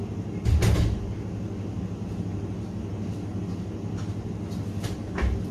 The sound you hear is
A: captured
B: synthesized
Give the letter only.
A